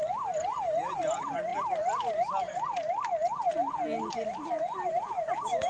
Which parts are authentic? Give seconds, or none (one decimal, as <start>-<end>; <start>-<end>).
0.0-5.7